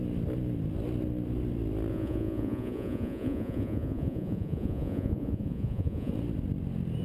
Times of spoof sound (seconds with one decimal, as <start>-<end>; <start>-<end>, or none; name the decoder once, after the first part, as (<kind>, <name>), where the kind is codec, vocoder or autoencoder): 1.9-6.1 (vocoder, Vocos)